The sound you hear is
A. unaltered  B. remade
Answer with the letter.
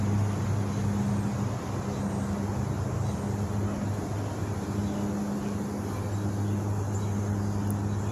A